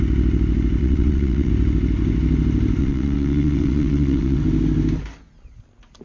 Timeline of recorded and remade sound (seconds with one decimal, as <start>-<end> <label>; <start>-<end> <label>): 0.0-0.8 recorded; 0.8-1.5 remade; 1.5-2.8 recorded; 2.8-4.4 remade; 4.4-6.0 recorded